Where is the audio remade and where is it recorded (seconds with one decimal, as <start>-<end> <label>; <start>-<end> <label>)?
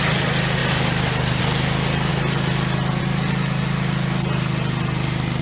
0.0-5.4 recorded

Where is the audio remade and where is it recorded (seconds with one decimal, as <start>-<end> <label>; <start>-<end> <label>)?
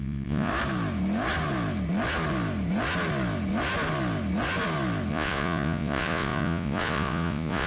0.0-0.5 remade; 0.5-5.1 recorded; 5.1-7.7 remade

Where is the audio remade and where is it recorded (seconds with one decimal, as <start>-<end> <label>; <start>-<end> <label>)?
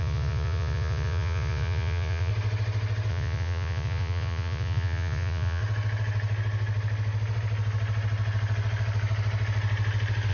0.0-2.3 remade; 2.3-3.1 recorded; 3.1-5.6 remade; 5.6-10.3 recorded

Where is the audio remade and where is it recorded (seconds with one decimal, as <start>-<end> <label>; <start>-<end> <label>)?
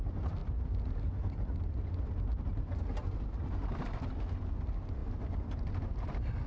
0.0-6.5 recorded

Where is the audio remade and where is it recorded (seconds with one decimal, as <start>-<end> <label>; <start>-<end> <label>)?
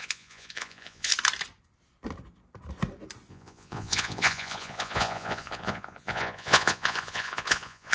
0.0-1.1 remade; 1.1-3.3 recorded; 3.3-7.9 remade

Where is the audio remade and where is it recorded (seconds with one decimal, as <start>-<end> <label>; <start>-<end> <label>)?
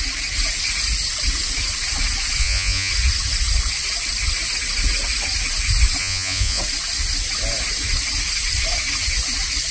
0.0-2.4 recorded; 2.4-2.9 remade; 2.9-6.0 recorded; 6.0-6.6 remade; 6.6-9.7 recorded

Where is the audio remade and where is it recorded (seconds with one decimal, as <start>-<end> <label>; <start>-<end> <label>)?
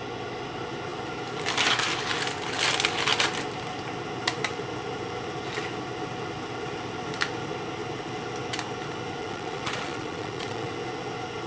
0.0-9.2 recorded; 9.2-10.7 remade; 10.7-11.5 recorded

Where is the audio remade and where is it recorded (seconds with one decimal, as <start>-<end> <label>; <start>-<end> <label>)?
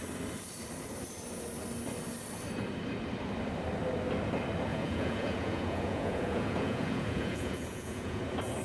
0.0-4.7 recorded; 4.7-8.2 remade; 8.2-8.6 recorded